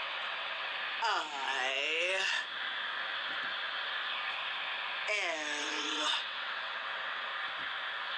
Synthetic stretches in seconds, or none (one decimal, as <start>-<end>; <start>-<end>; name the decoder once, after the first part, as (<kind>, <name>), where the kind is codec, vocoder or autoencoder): 0.0-0.7 (vocoder, WaveNeXt); 5.6-7.3